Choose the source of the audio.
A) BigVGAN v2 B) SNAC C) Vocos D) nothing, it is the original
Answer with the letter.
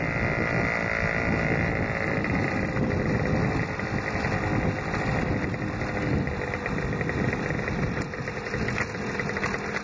D